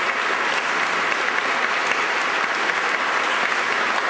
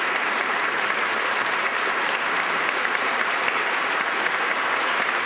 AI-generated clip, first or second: second